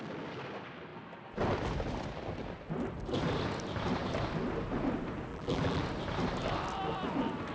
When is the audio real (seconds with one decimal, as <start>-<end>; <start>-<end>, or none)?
0.0-5.3; 5.8-7.5